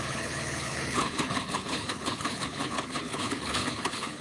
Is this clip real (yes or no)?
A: no